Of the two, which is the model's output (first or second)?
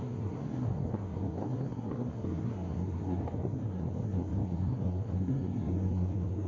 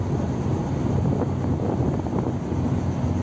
first